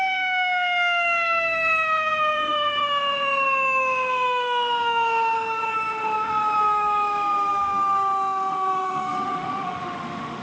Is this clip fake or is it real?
fake